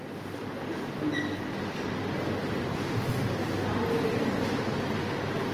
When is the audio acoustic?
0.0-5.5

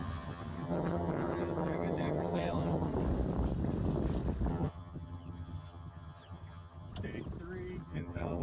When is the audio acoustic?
2.9-4.5; 6.9-7.8

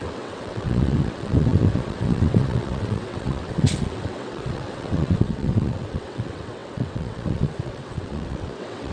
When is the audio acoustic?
none

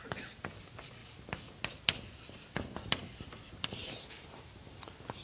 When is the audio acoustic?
0.0-5.2

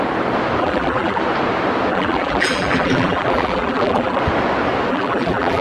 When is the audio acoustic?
0.0-0.6; 1.2-1.9; 4.2-4.9